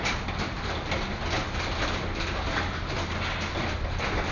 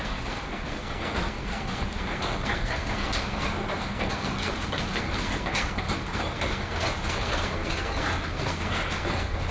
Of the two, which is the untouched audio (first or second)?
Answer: first